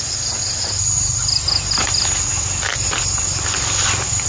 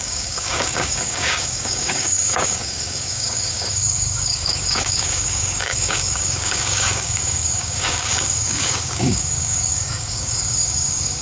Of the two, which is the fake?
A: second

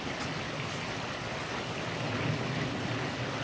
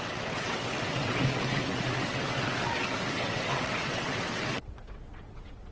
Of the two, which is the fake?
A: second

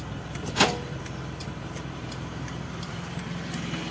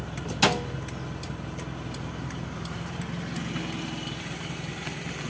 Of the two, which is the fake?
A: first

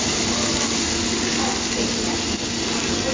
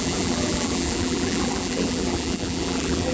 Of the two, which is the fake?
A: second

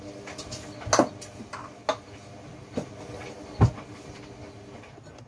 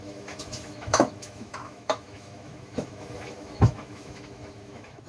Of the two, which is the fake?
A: second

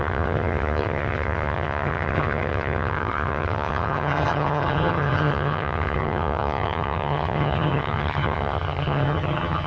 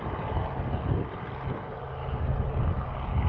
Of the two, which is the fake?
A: first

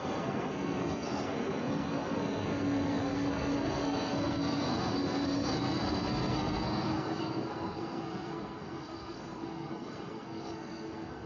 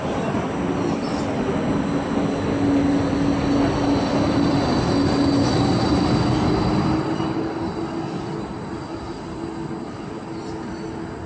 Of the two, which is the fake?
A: first